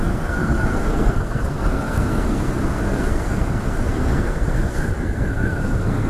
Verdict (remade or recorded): remade